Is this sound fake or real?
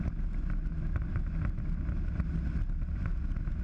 real